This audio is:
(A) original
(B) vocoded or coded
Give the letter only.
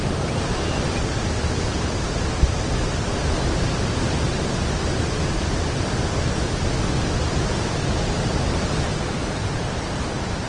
A